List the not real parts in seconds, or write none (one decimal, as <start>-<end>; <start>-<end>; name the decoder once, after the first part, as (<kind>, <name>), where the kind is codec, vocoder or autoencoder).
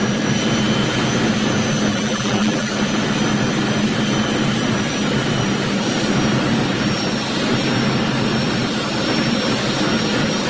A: 1.9-2.7 (vocoder, BigVGAN v2)